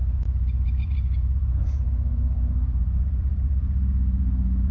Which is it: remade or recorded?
remade